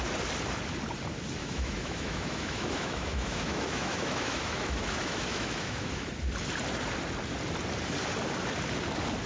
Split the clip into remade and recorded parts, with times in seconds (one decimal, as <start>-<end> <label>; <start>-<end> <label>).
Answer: 0.0-1.4 recorded; 1.4-6.1 remade; 6.1-9.3 recorded